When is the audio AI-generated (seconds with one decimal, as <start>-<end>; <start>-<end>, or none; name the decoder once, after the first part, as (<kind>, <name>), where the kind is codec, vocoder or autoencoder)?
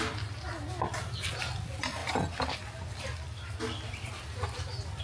none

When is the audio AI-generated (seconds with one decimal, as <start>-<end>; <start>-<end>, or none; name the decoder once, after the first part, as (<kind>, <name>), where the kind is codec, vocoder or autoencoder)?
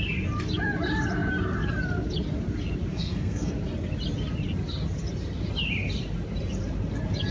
2.9-3.5 (codec, SNAC)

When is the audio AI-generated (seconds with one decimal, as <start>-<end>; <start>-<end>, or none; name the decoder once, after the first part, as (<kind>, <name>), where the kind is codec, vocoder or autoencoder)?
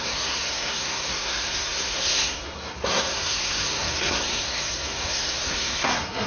0.0-6.3 (codec, SNAC)